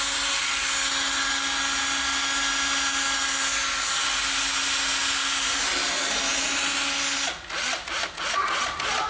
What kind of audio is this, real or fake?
real